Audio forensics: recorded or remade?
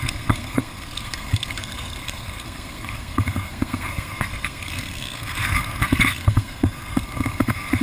remade